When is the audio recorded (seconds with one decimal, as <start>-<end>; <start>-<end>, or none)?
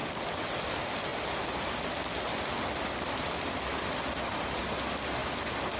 0.0-5.8